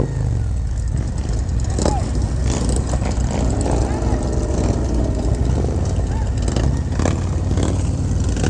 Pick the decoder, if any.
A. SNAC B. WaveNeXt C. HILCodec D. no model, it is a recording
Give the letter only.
D